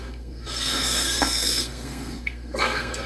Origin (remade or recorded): remade